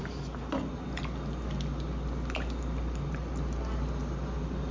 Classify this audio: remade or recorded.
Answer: recorded